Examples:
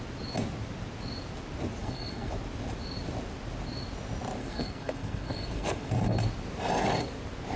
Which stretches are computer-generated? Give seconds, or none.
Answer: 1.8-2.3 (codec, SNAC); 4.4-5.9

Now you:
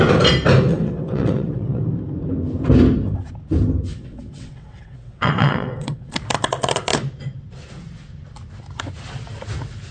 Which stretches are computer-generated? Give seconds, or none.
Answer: 0.7-1.8 (vocoder, WaveNeXt); 3.9-6.1

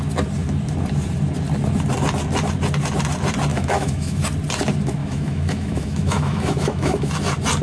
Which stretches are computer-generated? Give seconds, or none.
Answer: 3.5-4.2 (autoencoder, DAC-VAE); 5.0-7.1

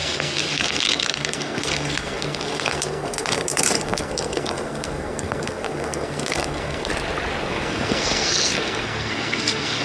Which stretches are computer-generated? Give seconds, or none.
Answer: 0.0-6.9 (codec, SNAC); 7.4-9.8

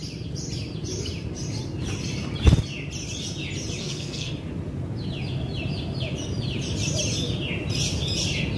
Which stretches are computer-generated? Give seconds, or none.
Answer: 3.8-4.3 (codec, SNAC)

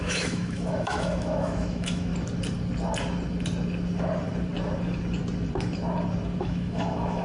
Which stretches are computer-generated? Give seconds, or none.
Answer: 0.0-2.1 (autoencoder, DAC-VAE); 6.4-7.2

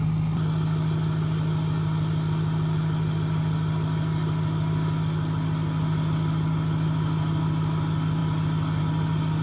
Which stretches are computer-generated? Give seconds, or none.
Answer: none

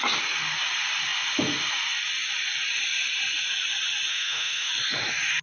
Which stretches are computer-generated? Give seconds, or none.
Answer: 4.1-4.7 (autoencoder, DAC-VAE)